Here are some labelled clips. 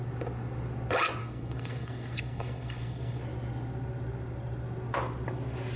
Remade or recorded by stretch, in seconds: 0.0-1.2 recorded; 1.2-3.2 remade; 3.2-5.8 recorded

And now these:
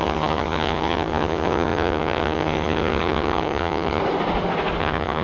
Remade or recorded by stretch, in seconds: 0.0-4.0 remade; 4.0-4.8 recorded; 4.8-5.2 remade